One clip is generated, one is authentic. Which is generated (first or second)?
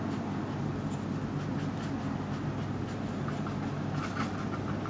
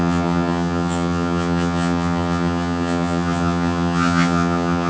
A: second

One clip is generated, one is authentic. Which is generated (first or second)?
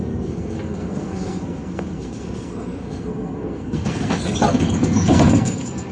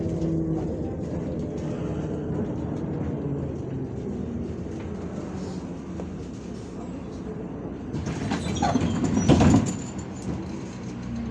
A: first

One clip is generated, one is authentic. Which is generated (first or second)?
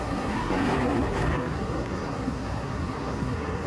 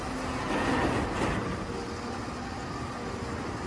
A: first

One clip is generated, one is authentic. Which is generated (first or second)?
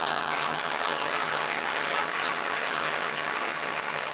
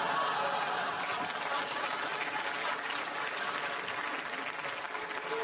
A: first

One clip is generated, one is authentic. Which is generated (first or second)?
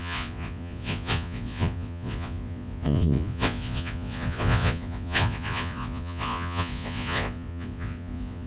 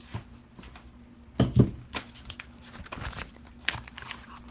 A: first